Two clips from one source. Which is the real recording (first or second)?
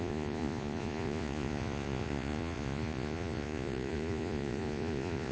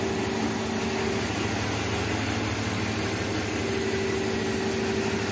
second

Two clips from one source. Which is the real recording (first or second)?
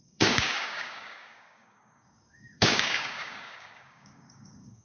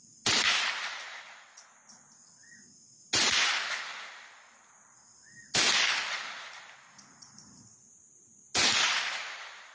second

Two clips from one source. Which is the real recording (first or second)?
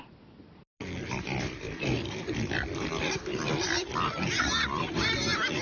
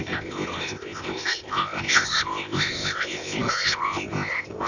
first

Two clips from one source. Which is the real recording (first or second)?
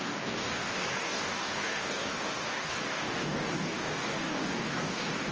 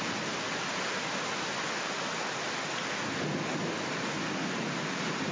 second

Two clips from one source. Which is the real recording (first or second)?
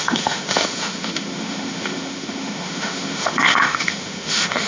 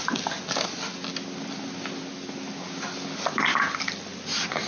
second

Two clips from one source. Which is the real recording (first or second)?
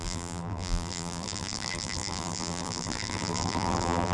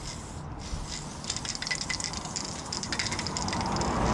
second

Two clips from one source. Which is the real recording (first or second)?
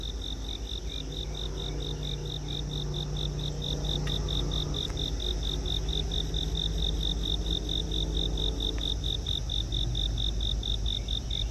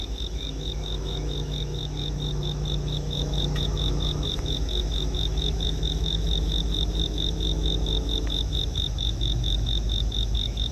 first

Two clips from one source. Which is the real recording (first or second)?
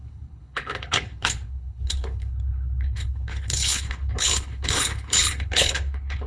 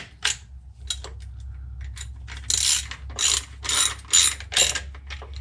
second